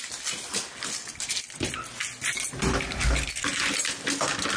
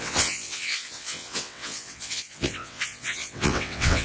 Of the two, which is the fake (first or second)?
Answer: second